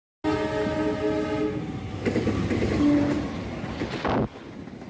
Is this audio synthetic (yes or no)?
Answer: no